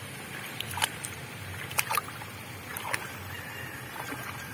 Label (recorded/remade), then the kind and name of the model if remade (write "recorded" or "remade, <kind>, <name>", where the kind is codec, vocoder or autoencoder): remade, vocoder, BigVGAN v2